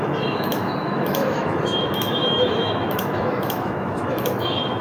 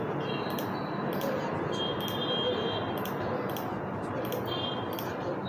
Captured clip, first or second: second